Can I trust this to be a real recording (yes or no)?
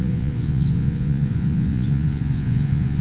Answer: no